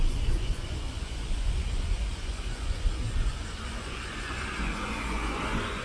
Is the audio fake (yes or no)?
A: yes